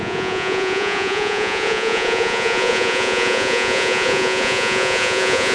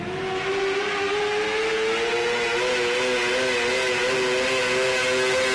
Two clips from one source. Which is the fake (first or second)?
first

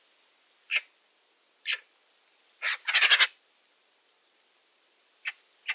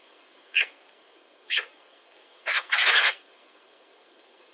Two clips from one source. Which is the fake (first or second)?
second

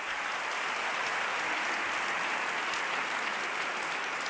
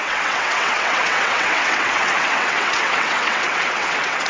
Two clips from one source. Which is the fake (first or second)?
second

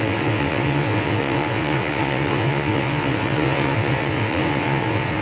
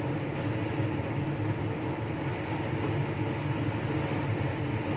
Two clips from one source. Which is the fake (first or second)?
first